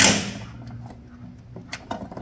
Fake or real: real